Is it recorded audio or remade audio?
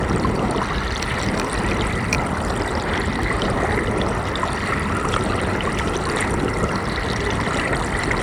remade